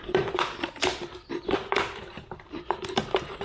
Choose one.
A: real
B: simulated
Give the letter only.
A